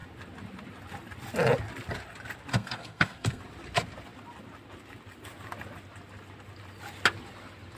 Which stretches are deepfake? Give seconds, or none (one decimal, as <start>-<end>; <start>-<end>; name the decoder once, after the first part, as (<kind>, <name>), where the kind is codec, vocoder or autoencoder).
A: 2.5-3.4 (codec, SNAC)